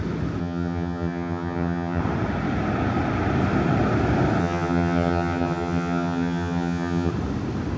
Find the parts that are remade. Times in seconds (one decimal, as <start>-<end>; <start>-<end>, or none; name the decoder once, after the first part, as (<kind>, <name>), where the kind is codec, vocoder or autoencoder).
0.4-2.0 (vocoder, HiFi-GAN); 4.4-7.1